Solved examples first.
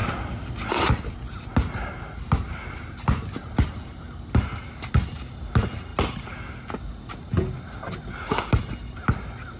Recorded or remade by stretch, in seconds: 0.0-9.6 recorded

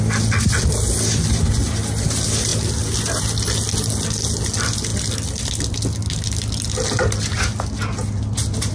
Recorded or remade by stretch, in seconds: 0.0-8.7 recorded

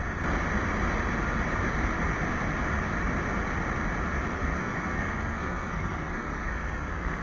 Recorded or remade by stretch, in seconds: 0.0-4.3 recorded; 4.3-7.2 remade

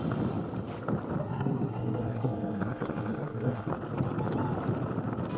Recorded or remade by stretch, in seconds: 0.0-1.2 recorded; 1.2-3.7 remade; 3.7-5.4 recorded

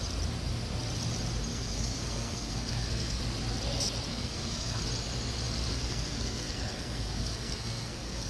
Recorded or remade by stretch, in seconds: 0.0-1.5 recorded; 1.5-3.2 remade; 3.2-4.1 recorded; 4.1-4.8 remade; 4.8-5.7 recorded; 5.7-8.3 remade